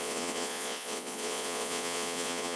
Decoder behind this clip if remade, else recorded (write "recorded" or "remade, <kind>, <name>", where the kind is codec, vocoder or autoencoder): remade, vocoder, Vocos